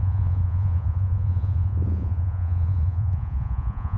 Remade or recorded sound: remade